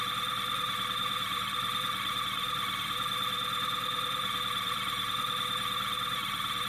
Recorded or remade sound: remade